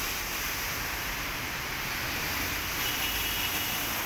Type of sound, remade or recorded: recorded